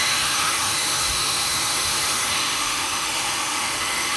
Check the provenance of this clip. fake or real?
fake